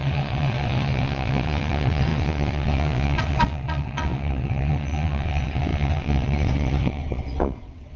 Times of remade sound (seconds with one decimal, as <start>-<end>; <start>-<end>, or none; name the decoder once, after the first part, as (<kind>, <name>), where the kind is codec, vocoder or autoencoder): 0.0-8.0 (vocoder, WaveNeXt)